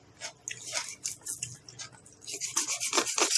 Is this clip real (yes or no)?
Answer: yes